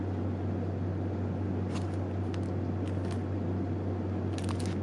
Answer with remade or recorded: recorded